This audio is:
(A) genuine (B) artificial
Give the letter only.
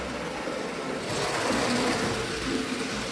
A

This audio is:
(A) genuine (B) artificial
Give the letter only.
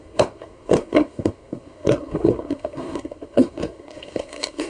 B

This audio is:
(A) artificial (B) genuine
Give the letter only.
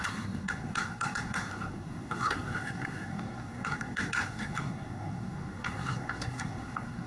A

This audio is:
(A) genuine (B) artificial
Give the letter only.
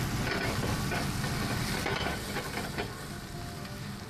A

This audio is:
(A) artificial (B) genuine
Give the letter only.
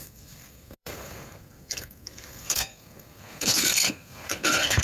A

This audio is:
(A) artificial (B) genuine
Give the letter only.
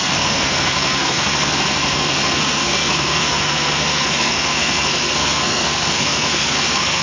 A